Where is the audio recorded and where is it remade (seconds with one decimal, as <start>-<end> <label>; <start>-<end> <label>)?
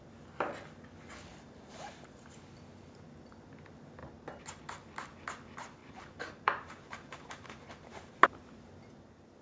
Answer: 0.0-1.3 recorded; 1.3-2.2 remade; 2.2-5.8 recorded; 5.8-8.2 remade; 8.2-9.4 recorded